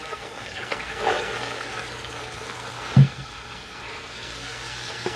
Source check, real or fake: fake